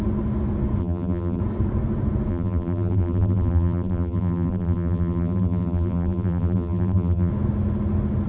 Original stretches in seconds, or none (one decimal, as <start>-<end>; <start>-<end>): 0.0-0.8; 1.4-2.3; 7.3-8.3